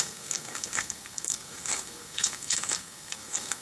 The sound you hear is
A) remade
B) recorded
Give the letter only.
A